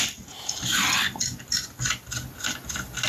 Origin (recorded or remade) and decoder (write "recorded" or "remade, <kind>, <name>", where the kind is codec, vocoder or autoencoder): recorded